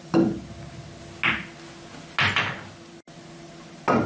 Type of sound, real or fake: real